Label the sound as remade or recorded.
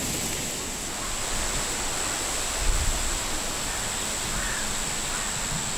recorded